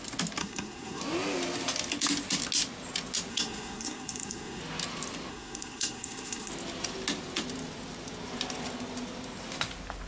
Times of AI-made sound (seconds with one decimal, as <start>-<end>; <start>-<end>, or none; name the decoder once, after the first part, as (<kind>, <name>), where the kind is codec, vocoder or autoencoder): 0.4-1.0 (codec, SNAC); 3.3-4.6; 5.3-6.5